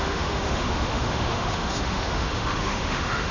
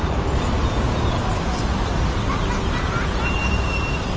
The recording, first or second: second